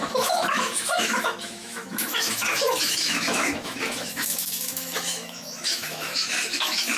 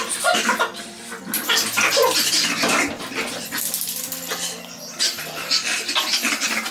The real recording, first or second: second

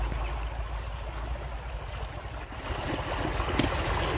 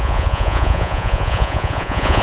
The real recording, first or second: first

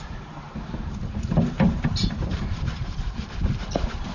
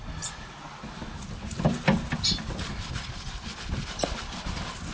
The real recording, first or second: second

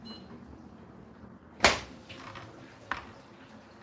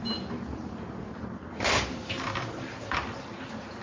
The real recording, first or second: first